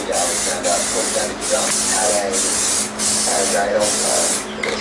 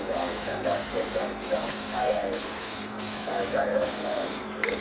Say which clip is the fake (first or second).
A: second